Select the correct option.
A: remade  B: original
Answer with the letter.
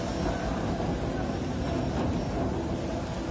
B